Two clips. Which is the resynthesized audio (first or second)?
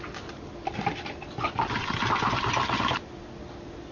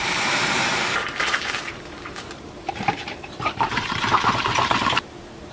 second